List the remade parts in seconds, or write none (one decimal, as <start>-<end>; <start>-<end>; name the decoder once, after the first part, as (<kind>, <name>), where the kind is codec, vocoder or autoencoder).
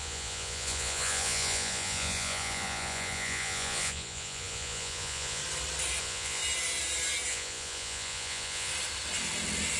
0.0-5.4 (vocoder, Vocos); 6.0-6.4; 7.3-8.7